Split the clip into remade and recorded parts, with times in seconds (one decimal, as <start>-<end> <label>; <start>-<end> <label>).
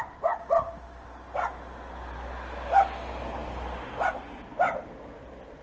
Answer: 0.0-5.6 recorded